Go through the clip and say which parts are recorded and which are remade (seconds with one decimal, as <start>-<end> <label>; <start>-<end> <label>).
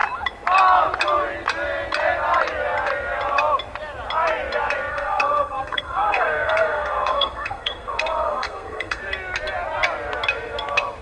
0.0-4.9 recorded; 4.9-9.0 remade; 9.0-11.0 recorded